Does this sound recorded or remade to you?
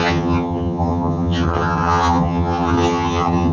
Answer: remade